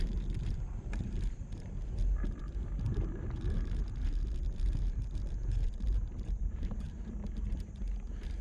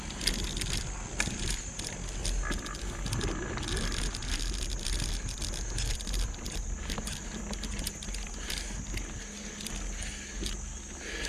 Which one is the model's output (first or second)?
first